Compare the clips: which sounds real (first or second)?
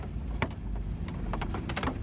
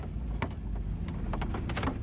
second